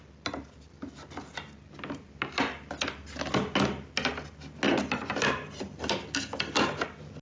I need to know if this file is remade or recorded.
recorded